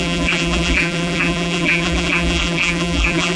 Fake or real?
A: fake